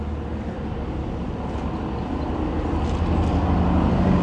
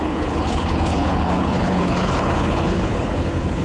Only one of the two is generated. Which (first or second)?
second